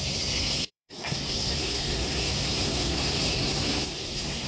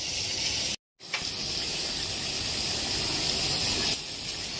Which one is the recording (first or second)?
second